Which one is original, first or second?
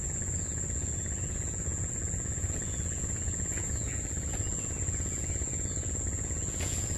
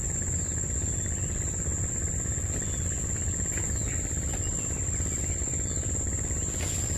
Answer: second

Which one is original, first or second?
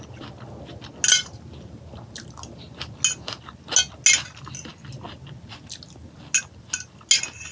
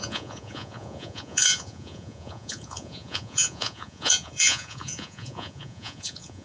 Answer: first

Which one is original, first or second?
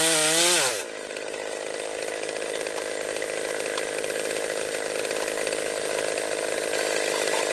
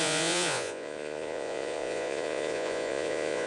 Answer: first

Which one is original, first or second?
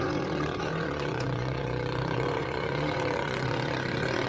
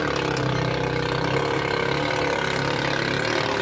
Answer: second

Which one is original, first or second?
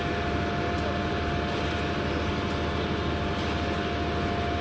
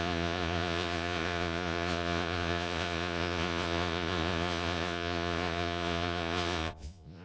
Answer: first